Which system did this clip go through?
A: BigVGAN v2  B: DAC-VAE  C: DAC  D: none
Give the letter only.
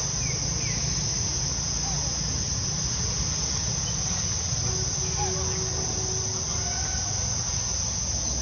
D